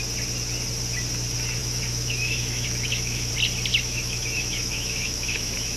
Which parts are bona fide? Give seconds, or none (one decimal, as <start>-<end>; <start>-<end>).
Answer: 0.0-1.6; 3.3-3.7